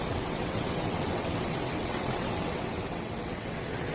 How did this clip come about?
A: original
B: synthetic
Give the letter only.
B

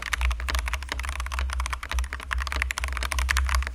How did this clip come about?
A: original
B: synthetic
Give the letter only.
A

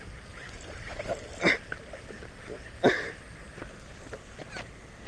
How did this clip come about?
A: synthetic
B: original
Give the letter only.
B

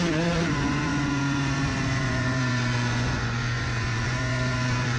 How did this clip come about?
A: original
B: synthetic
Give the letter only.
B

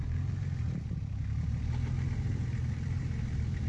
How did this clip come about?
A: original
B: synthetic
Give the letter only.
B